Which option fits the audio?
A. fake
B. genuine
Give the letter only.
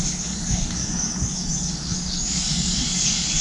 A